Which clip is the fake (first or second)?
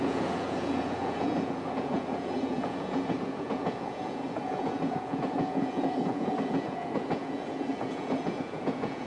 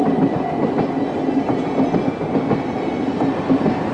first